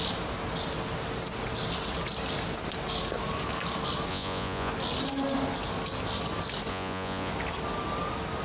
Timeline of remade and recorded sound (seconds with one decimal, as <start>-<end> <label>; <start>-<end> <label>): 0.0-4.1 recorded; 4.1-4.7 remade; 4.7-6.7 recorded; 6.7-7.3 remade; 7.3-8.4 recorded